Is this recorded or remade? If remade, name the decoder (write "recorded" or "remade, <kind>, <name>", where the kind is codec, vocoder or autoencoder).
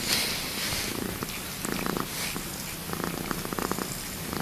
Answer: recorded